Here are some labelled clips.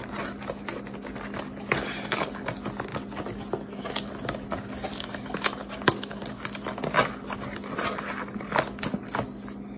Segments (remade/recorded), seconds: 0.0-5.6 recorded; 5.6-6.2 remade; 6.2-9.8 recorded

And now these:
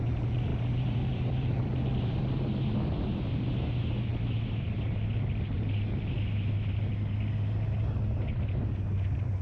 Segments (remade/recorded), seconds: 0.0-0.5 recorded; 0.5-2.2 remade; 2.2-9.4 recorded

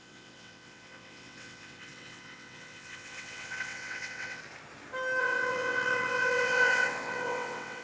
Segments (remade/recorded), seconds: 0.0-4.4 remade; 4.4-5.2 recorded; 5.2-7.8 remade

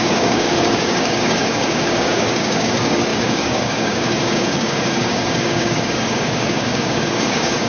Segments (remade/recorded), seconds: 0.0-7.7 remade

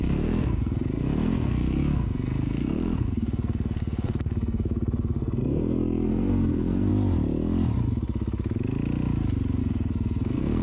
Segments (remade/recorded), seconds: 0.0-6.9 remade; 6.9-9.6 recorded; 9.6-10.6 remade